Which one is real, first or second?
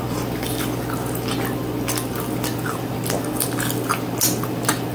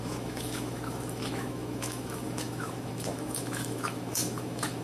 first